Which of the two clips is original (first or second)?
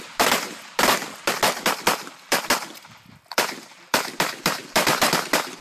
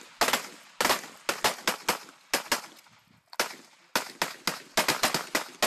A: second